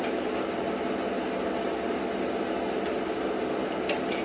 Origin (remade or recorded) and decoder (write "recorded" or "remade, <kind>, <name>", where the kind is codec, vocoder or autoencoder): recorded